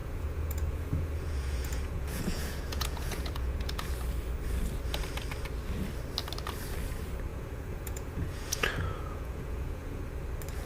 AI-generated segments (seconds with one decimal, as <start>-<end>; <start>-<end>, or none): 0.0-3.9; 7.3-10.0

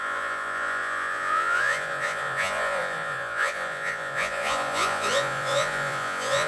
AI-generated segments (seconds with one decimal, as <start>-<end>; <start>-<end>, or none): 0.0-6.5